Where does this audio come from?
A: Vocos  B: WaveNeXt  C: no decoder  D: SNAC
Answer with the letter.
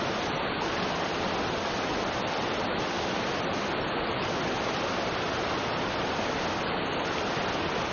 C